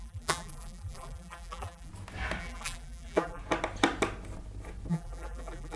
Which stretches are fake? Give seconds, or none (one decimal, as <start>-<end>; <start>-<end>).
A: 0.0-1.9; 2.4-3.4; 4.9-5.8